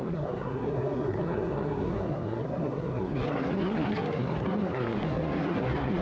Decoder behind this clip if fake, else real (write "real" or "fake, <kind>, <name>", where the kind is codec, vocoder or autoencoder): fake, codec, SNAC